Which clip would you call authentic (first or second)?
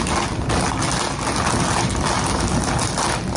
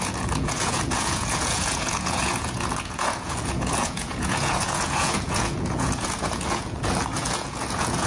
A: first